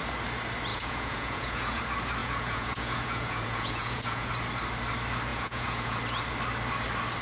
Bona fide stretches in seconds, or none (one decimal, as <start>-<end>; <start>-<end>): 0.0-0.7; 1.8-2.2; 4.3-5.3; 6.0-7.2